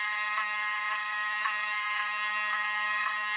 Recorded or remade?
remade